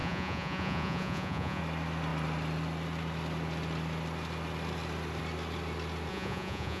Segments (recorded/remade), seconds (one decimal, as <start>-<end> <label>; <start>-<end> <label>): 0.0-1.6 remade; 1.6-6.1 recorded; 6.1-6.8 remade